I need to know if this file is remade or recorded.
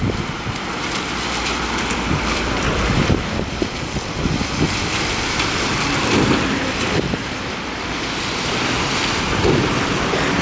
remade